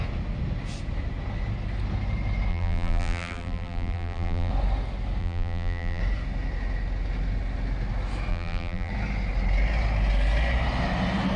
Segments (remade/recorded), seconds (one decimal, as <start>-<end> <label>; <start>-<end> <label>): 0.0-2.5 recorded; 2.5-4.5 remade; 4.5-5.2 recorded; 5.2-6.0 remade; 6.0-8.3 recorded; 8.3-8.9 remade; 8.9-11.4 recorded